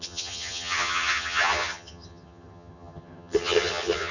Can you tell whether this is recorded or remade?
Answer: remade